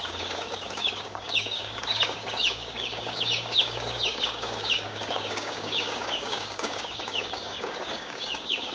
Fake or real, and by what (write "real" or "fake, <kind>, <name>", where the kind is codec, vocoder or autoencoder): fake, codec, DAC